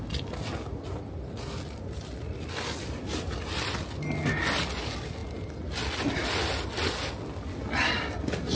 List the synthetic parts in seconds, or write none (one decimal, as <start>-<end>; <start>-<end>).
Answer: none